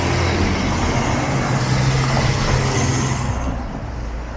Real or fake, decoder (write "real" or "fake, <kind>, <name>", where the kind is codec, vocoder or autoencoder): real